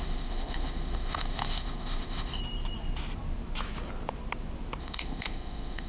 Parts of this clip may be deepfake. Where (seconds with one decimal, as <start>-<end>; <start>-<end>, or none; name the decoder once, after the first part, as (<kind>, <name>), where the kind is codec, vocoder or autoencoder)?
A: 0.0-2.4 (autoencoder, DAC-VAE); 4.8-5.9